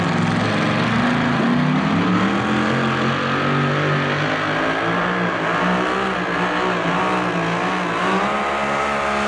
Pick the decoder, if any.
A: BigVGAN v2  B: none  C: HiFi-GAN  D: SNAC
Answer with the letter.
B